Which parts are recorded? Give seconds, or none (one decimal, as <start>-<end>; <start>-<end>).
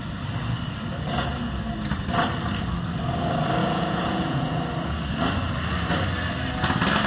0.0-3.6; 4.6-7.1